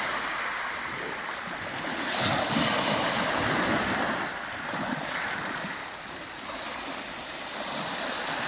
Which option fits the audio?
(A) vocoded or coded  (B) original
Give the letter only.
B